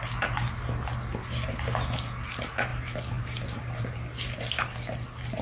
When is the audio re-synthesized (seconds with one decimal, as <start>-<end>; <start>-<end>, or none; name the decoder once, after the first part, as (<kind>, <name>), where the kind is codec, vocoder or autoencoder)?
none